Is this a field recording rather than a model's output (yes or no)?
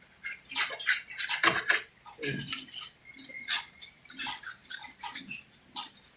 yes